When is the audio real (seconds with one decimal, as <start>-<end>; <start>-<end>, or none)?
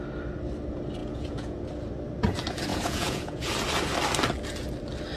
0.0-1.0; 1.6-2.7; 3.5-5.2